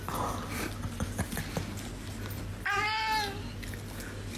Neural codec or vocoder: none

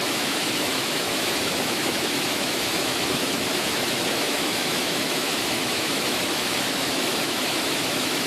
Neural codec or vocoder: autoencoder, DAC-VAE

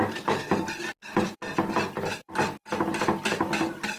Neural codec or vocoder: none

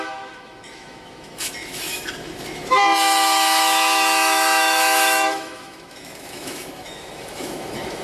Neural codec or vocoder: autoencoder, DAC-VAE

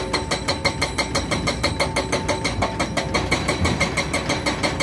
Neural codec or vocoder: none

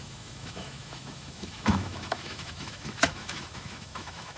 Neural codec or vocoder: autoencoder, DAC-VAE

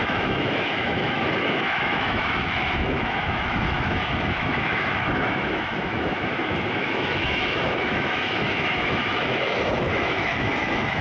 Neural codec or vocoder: autoencoder, DAC-VAE